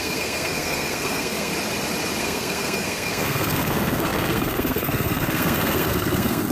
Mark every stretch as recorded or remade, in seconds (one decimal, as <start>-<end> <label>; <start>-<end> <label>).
0.0-1.5 remade; 1.5-2.2 recorded; 2.2-6.5 remade